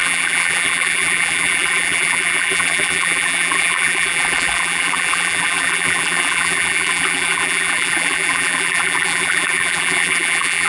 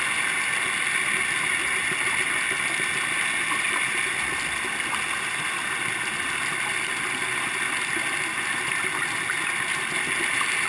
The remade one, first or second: first